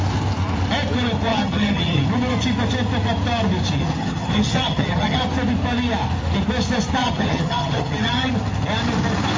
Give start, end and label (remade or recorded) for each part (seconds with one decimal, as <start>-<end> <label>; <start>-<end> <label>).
0.0-1.3 recorded; 1.3-2.0 remade; 2.0-3.8 recorded; 3.8-5.2 remade; 5.2-7.0 recorded; 7.0-8.3 remade; 8.3-9.4 recorded